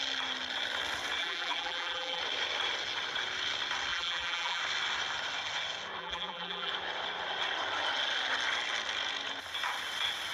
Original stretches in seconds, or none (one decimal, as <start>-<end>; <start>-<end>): 0.0-1.2; 2.2-3.9; 4.6-6.0; 6.7-10.3